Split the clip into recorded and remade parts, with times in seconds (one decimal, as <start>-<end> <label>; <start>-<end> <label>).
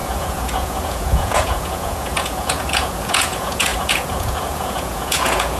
0.0-5.6 remade